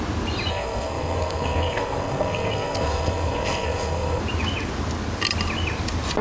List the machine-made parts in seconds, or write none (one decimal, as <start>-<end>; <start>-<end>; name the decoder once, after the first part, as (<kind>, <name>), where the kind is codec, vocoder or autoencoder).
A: 0.5-4.2 (codec, SNAC)

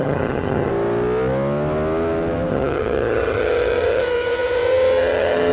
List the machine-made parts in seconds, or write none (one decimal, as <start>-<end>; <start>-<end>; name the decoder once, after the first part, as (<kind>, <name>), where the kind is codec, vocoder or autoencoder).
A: 0.0-0.7 (vocoder, HiFi-GAN); 2.5-5.5

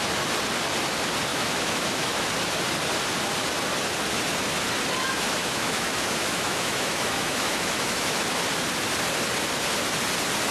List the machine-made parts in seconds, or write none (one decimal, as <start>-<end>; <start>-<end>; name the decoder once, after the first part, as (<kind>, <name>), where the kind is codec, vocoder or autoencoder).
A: 1.3-2.3 (autoencoder, DAC-VAE); 5.4-8.2

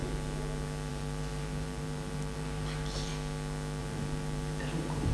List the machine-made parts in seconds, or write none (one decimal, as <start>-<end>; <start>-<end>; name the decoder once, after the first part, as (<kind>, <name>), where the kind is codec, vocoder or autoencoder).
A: 0.9-3.1 (vocoder, BigVGAN v2); 3.8-5.1